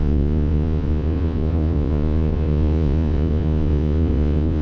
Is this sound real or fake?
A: fake